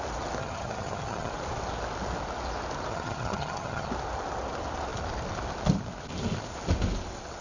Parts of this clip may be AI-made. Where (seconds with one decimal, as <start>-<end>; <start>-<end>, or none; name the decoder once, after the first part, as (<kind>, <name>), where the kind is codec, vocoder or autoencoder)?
0.4-1.3 (vocoder, HiFi-GAN); 2.9-3.9